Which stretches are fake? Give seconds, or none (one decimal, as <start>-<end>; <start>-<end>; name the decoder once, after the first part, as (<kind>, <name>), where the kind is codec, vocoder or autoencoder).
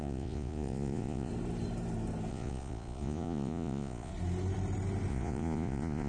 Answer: 0.0-1.3 (vocoder, Vocos); 2.3-4.1; 5.1-6.1